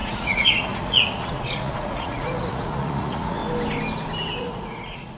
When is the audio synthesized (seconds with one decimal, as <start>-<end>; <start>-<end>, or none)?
0.0-3.4; 4.4-5.2